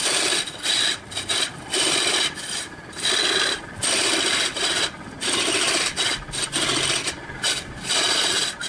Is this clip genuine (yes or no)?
yes